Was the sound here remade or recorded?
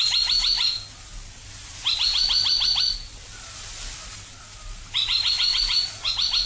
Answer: recorded